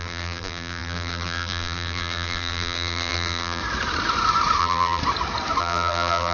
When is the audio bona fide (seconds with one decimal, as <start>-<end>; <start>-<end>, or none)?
3.6-4.6; 5.0-5.6

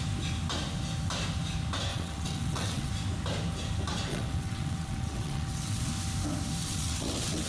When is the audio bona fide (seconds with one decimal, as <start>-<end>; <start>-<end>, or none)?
0.0-1.9; 2.9-4.1; 5.9-6.6

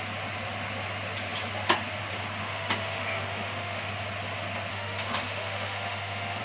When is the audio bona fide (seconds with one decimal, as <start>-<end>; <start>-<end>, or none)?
0.0-2.4; 3.9-4.7

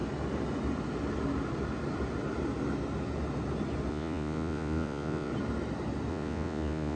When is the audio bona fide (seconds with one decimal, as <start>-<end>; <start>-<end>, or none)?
0.0-3.9; 5.3-6.1

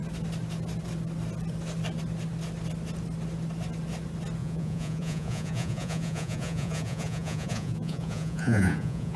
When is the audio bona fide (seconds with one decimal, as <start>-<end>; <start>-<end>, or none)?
0.0-4.4

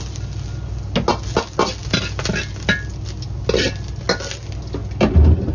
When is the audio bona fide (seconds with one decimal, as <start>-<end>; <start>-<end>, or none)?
0.0-5.5